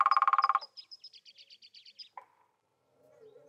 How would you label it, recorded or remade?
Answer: remade